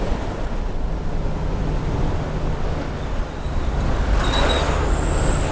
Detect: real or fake real